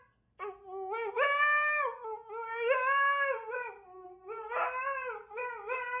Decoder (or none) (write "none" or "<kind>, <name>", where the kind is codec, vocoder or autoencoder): none